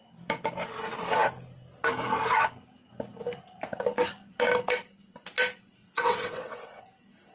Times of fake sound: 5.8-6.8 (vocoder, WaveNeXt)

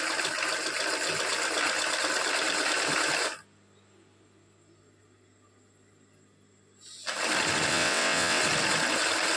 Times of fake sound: 7.7-8.4 (vocoder, WaveNeXt)

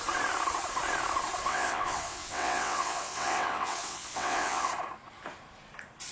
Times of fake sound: 1.5-4.7 (vocoder, WaveNeXt)

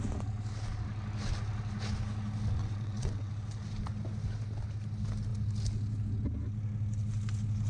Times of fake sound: 2.6-3.3 (vocoder, WaveNeXt)

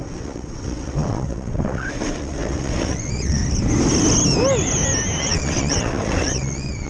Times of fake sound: 0.0-3.4 (vocoder, WaveNeXt); 5.2-6.9